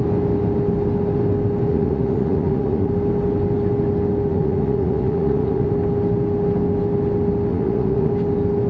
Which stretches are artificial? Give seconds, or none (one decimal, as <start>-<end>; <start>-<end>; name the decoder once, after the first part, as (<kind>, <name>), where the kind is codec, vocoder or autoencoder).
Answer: 1.7-2.9 (vocoder, Vocos); 4.3-5.7; 7.5-8.1